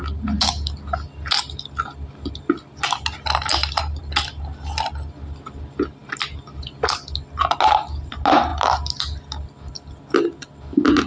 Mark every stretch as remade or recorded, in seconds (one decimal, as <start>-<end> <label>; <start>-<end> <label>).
0.0-3.5 recorded; 3.5-4.0 remade; 4.0-11.1 recorded